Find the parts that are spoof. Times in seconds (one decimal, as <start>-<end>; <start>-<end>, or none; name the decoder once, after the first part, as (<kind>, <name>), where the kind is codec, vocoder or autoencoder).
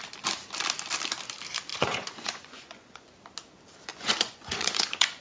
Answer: 1.7-3.2 (vocoder, Vocos); 3.9-5.2